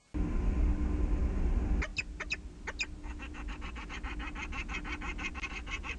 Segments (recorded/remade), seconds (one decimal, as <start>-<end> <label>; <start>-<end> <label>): 0.0-6.0 recorded

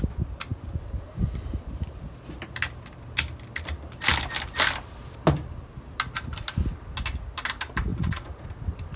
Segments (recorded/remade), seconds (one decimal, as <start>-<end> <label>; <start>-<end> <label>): 0.0-7.9 recorded; 7.9-8.6 remade; 8.6-9.0 recorded

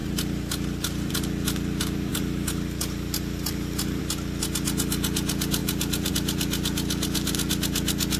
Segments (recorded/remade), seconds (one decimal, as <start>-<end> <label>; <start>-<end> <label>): 0.0-1.1 remade; 1.1-2.1 recorded; 2.1-4.0 remade; 4.0-5.6 recorded; 5.6-6.1 remade; 6.1-8.2 recorded